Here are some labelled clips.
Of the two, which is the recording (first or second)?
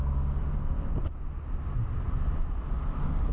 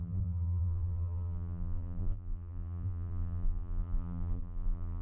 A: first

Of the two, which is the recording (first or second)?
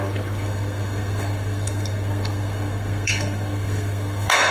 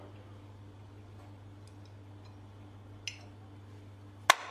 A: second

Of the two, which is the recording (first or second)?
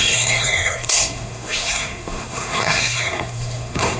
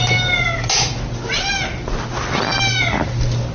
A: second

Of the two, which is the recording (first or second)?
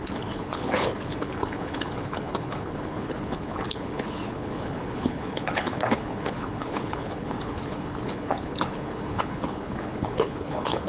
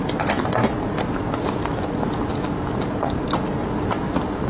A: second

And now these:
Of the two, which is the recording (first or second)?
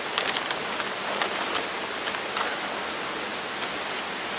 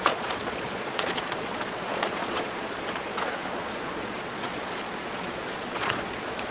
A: first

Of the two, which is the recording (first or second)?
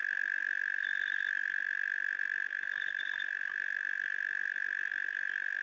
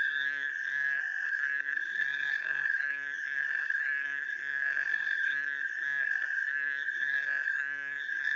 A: first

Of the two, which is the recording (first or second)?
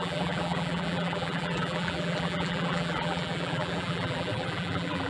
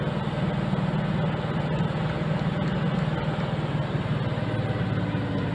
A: second